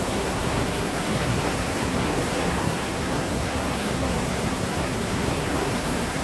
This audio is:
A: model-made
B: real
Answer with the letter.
A